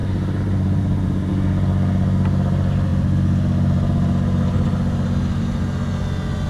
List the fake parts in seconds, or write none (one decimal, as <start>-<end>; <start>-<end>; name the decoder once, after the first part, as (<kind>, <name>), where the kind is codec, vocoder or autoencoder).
0.0-1.3 (vocoder, BigVGAN v2)